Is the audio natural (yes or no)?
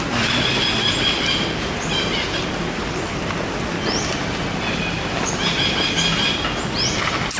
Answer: yes